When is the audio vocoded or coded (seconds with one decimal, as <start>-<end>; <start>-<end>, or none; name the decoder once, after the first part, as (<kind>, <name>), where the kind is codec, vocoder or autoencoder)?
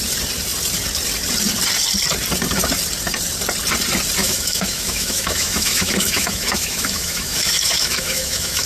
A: 4.2-8.7 (autoencoder, DAC-VAE)